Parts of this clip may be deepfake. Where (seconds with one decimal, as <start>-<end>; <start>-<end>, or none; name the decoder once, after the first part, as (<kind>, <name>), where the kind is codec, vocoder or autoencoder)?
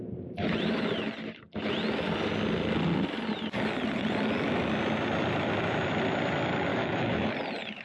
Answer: 6.7-7.3 (autoencoder, DAC-VAE)